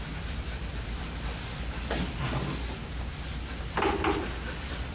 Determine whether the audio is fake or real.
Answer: real